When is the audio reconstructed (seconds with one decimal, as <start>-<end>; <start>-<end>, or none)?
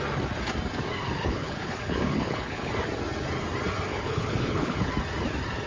1.2-2.7; 3.9-4.9